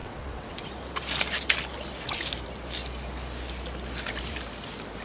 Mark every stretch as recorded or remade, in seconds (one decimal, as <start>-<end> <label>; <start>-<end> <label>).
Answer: 0.0-0.7 remade; 0.7-5.0 recorded

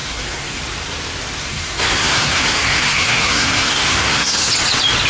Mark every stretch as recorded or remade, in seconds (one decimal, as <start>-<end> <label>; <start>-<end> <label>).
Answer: 0.0-0.6 remade; 0.6-1.4 recorded; 1.4-4.5 remade; 4.5-5.1 recorded